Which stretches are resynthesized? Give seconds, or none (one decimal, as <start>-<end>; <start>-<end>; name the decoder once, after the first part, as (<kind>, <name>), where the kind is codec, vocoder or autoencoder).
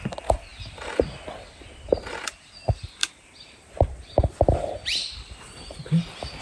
3.0-4.3 (vocoder, BigVGAN v2)